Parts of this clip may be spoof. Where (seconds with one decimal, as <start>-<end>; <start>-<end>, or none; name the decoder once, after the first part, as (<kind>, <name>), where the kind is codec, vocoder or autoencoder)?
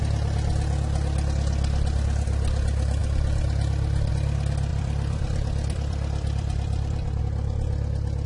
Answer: 4.7-7.2 (vocoder, BigVGAN v2)